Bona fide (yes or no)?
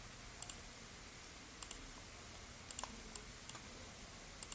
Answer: yes